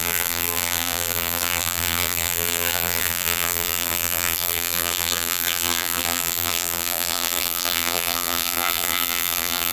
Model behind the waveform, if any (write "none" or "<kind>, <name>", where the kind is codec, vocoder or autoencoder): vocoder, BigVGAN v2